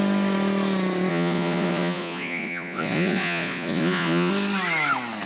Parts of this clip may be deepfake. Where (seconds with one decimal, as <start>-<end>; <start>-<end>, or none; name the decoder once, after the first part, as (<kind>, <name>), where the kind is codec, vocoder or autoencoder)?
1.1-4.3 (vocoder, Vocos)